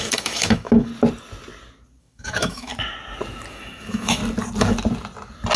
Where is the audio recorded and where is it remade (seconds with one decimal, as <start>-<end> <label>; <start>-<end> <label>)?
0.0-0.9 remade; 0.9-2.0 recorded; 2.0-2.7 remade; 2.7-3.5 recorded; 3.5-4.2 remade; 4.2-5.6 recorded